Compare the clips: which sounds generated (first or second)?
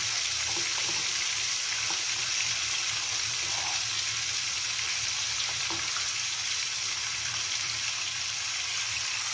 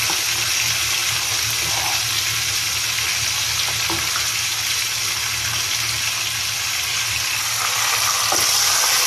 first